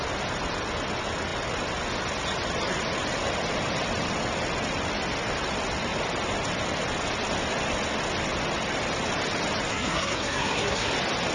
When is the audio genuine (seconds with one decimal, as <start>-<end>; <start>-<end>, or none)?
0.0-9.7; 10.9-11.3